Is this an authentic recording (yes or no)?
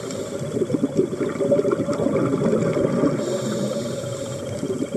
yes